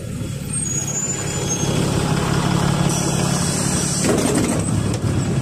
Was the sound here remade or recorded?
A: recorded